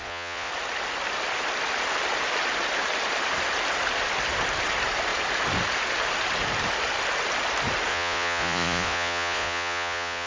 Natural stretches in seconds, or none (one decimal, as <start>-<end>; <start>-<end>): 0.5-7.9